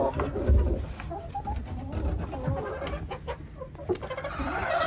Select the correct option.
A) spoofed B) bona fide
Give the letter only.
B